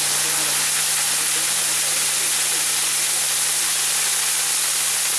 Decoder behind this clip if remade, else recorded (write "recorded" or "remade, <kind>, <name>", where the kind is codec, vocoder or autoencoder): recorded